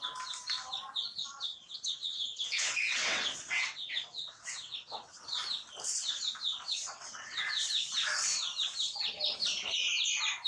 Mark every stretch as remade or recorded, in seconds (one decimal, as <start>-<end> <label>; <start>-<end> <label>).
0.0-1.2 recorded; 1.2-5.2 remade; 5.2-6.5 recorded; 6.5-7.4 remade; 7.4-10.5 recorded